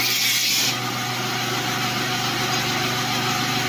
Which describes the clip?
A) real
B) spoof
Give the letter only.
A